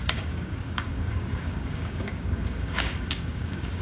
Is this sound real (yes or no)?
no